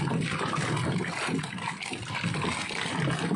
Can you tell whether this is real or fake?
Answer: fake